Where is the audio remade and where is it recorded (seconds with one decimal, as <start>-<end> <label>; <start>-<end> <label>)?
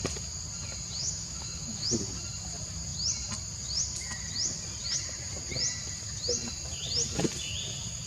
0.0-1.0 recorded; 1.0-1.9 remade; 1.9-8.1 recorded